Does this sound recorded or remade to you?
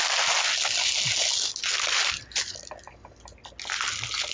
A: recorded